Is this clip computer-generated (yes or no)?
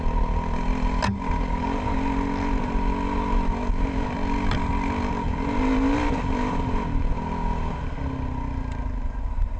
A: no